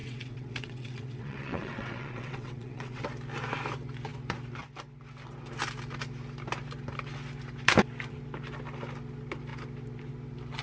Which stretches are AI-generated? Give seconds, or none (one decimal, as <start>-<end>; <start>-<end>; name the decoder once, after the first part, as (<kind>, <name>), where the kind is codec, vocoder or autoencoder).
0.0-3.0 (vocoder, WaveNeXt)

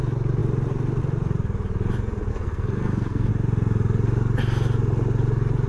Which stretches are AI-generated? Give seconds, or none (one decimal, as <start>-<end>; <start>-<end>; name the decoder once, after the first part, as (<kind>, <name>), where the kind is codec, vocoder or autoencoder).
2.3-3.3 (codec, SNAC)

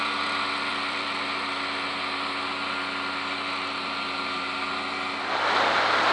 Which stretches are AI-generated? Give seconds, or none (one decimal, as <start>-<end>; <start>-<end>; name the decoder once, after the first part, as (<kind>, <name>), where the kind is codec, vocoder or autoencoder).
0.7-1.2 (vocoder, BigVGAN v2)

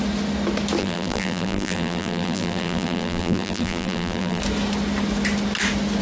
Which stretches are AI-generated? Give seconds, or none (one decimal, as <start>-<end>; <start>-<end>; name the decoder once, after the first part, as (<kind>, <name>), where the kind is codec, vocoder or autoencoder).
0.8-4.4 (vocoder, BigVGAN v2)

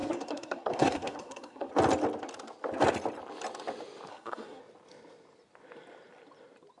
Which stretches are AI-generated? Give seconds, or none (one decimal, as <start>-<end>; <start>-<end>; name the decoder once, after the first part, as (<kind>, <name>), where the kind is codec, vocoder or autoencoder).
0.0-1.7 (codec, SNAC); 4.1-4.6

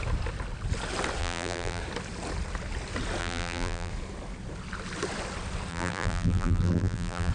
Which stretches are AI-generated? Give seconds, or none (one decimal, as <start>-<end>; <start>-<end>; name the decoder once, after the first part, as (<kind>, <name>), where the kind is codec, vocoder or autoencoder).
1.2-1.8 (vocoder, BigVGAN v2); 3.2-3.9; 5.7-7.3